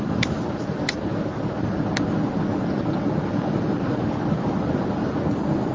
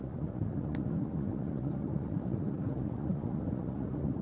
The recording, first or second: first